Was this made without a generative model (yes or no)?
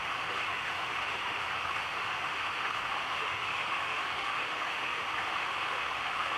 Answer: no